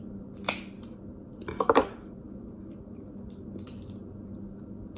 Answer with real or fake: real